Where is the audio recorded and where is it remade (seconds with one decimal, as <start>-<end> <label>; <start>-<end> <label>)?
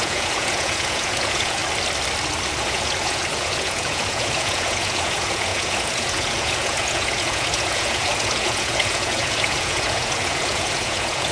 0.0-1.6 remade; 1.6-2.6 recorded; 2.6-11.3 remade